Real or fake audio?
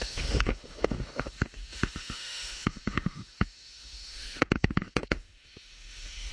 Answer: fake